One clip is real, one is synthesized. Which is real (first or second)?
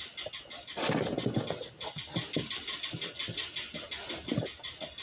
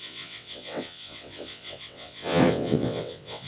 first